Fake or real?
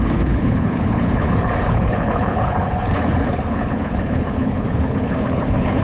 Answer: fake